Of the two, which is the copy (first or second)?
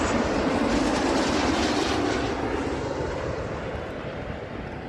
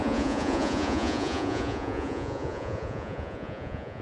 second